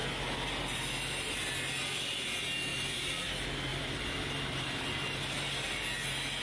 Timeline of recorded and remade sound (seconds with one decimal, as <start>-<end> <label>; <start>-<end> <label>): 0.0-2.7 recorded; 2.7-3.2 remade; 3.2-3.7 recorded; 3.7-5.8 remade; 5.8-6.4 recorded